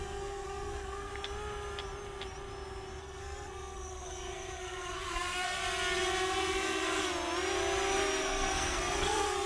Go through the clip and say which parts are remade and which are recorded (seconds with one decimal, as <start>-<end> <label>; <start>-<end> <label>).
0.0-1.1 remade; 1.1-3.0 recorded; 3.0-5.6 remade; 5.6-6.4 recorded; 6.4-7.0 remade; 7.0-8.2 recorded; 8.2-9.5 remade